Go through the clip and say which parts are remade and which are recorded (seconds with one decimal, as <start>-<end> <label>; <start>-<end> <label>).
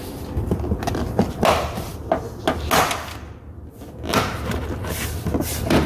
0.0-5.9 recorded